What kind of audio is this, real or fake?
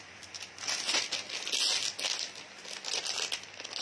real